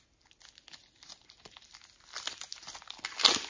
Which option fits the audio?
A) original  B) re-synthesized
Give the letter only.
A